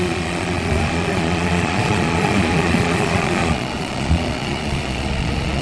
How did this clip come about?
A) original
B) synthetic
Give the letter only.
B